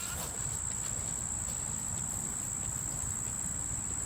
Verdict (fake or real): real